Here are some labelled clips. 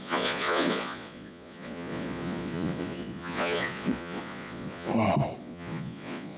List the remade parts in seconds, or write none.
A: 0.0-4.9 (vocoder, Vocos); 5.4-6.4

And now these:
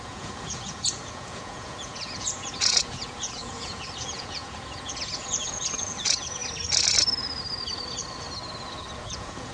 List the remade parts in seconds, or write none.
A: 0.0-6.4 (vocoder, Vocos); 9.0-9.5